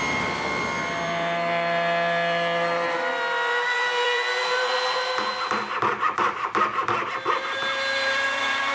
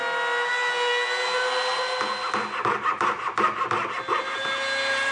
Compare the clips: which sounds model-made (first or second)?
first